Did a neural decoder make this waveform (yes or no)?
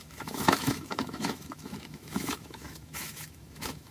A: yes